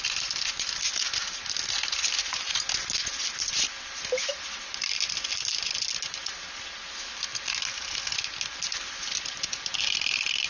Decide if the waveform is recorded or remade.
recorded